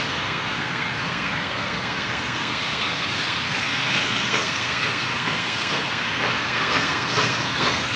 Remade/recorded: remade